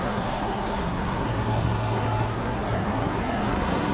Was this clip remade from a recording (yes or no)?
yes